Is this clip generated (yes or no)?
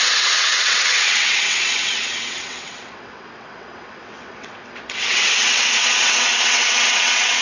yes